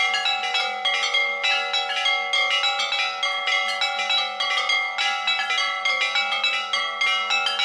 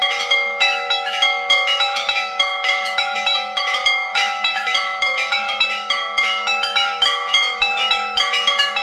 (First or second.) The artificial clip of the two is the second